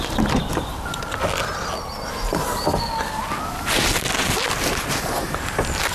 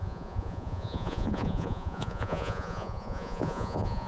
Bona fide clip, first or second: first